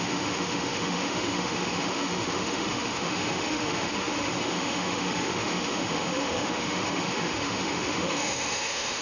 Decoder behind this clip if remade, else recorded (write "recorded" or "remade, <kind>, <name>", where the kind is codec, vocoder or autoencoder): remade, autoencoder, DAC-VAE